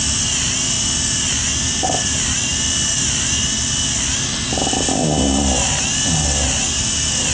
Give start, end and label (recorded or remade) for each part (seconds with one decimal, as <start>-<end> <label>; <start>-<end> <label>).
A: 0.0-7.3 recorded